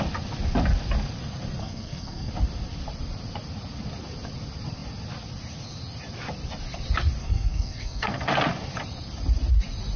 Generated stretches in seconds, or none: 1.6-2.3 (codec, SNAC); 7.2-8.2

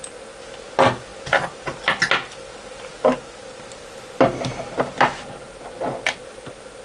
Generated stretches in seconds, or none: none

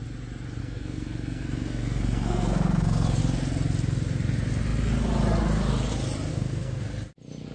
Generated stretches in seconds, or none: 0.6-3.2 (codec, SNAC); 6.3-6.8